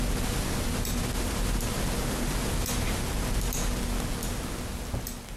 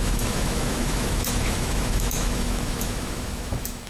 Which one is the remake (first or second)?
second